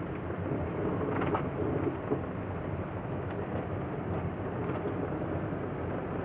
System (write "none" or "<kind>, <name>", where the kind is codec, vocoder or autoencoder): none